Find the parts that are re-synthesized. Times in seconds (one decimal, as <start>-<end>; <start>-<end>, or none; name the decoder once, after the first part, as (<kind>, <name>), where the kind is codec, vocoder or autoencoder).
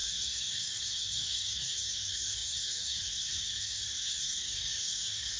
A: 0.0-5.4 (codec, DAC)